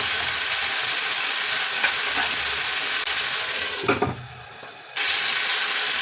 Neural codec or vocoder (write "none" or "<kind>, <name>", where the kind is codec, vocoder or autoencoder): none